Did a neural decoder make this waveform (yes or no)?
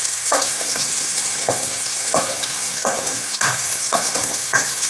yes